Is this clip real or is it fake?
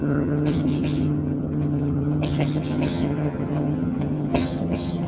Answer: fake